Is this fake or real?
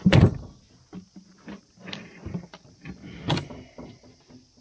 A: real